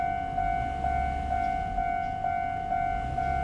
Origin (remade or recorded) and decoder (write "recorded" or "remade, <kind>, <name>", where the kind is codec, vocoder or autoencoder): recorded